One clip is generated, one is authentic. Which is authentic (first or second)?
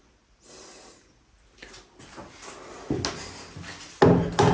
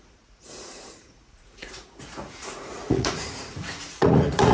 first